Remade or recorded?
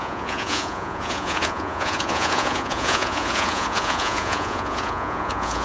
remade